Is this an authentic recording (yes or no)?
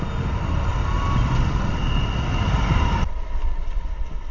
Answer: yes